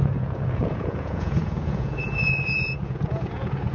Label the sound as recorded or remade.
remade